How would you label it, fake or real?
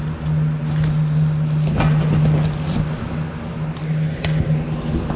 real